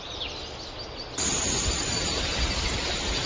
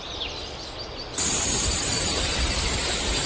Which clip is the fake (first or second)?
second